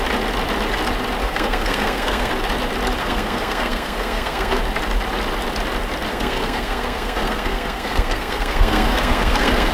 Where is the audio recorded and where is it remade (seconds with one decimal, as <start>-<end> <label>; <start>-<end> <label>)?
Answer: 0.0-1.2 recorded; 1.2-2.3 remade; 2.3-3.0 recorded; 3.0-4.6 remade; 4.6-6.1 recorded; 6.1-9.7 remade